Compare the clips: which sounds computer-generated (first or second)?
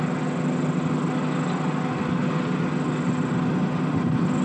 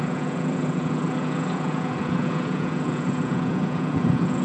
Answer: second